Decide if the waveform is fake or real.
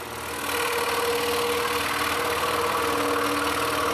real